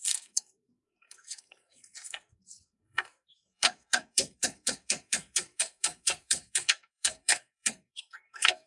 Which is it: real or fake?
fake